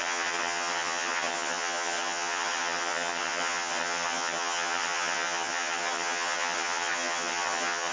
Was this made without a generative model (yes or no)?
no